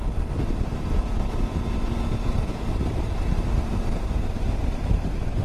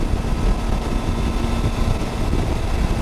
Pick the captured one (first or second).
second